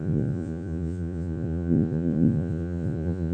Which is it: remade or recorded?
remade